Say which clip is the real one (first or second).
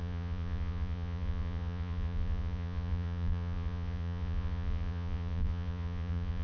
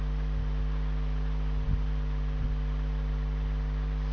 second